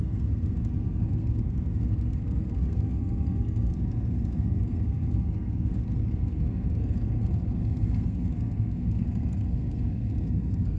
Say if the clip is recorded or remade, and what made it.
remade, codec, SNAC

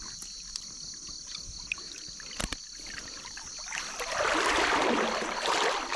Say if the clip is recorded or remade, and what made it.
recorded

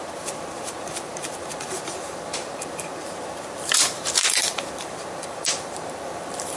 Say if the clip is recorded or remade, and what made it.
remade, vocoder, BigVGAN v2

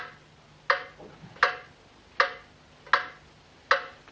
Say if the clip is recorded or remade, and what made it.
recorded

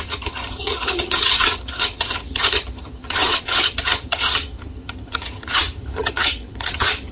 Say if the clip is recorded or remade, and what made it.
remade, vocoder, HiFi-GAN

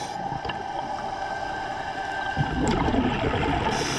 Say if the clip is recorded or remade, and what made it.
recorded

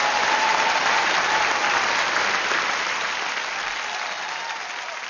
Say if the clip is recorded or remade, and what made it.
recorded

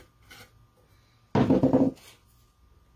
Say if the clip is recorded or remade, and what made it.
recorded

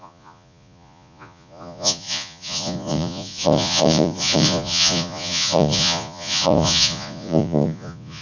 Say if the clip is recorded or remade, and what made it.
remade, vocoder, Vocos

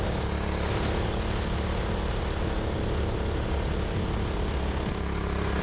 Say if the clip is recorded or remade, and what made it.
recorded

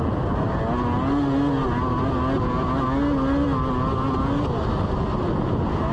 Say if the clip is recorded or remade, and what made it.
recorded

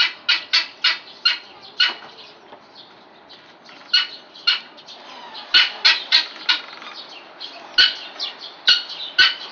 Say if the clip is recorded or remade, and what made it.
recorded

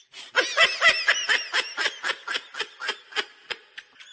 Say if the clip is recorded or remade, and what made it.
recorded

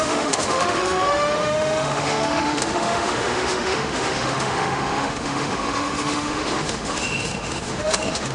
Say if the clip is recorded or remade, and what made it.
remade, autoencoder, DAC-VAE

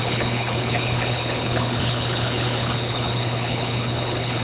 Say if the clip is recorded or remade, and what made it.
remade, codec, HILCodec